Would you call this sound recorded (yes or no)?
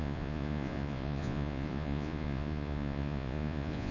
no